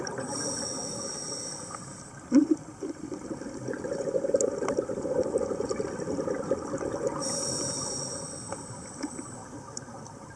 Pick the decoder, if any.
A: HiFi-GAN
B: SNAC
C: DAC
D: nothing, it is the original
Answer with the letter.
D